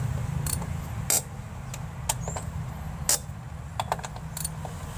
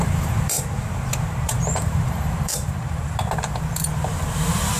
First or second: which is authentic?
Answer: first